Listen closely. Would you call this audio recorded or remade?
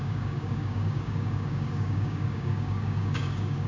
remade